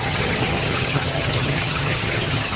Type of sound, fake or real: fake